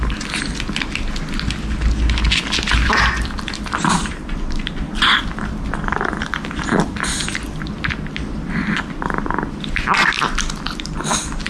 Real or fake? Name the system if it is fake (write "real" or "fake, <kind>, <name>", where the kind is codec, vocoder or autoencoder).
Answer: real